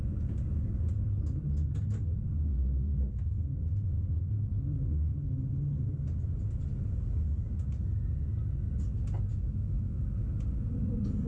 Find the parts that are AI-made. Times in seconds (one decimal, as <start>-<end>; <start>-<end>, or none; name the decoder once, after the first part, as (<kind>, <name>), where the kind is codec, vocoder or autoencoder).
9.3-10.0 (autoencoder, DAC-VAE)